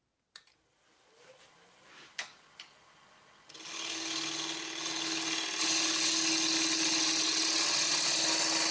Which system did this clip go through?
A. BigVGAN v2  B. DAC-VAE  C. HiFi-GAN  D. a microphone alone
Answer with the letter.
D